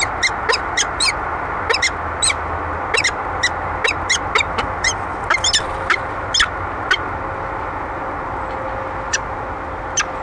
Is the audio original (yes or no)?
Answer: yes